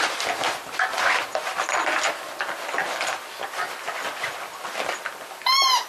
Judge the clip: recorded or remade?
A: recorded